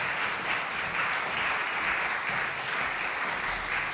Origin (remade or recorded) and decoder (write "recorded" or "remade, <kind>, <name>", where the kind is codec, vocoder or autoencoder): recorded